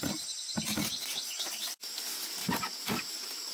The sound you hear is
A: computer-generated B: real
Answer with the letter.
A